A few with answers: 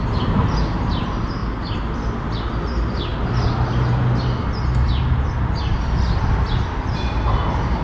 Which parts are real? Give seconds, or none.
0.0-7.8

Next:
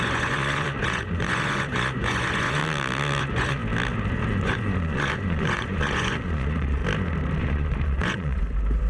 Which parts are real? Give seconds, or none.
2.6-3.2; 3.6-4.1; 6.8-7.4

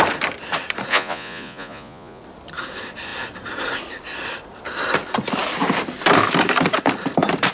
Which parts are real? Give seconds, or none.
0.0-0.9; 2.2-7.5

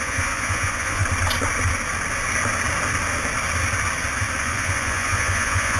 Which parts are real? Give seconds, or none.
1.0-4.4

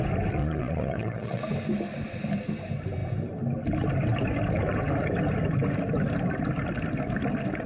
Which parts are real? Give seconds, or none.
0.0-0.4; 1.4-7.7